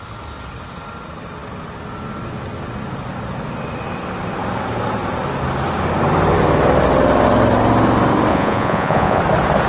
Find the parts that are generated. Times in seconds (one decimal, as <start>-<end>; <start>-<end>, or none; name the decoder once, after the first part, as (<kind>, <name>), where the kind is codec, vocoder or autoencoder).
8.3-9.2 (vocoder, Vocos)